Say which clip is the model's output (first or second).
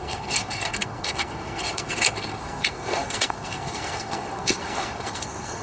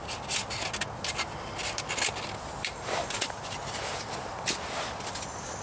first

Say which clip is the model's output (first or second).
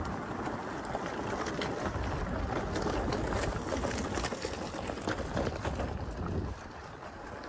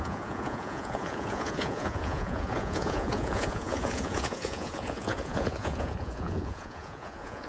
second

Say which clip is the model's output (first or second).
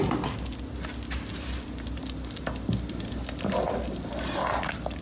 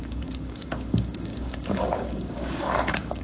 second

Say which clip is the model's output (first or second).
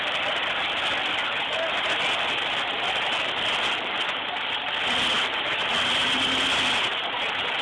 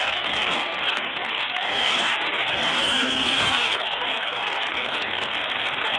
second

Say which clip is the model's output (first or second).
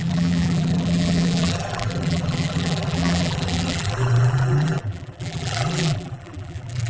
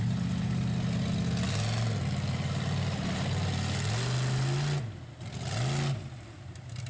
first